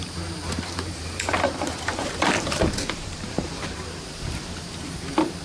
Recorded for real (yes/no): no